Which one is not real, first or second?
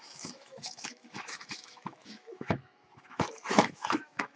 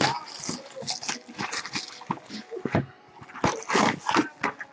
first